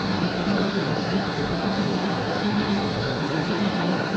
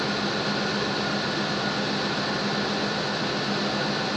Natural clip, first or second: second